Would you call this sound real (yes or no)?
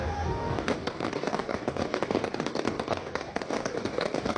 no